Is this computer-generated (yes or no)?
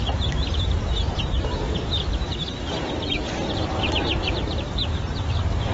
yes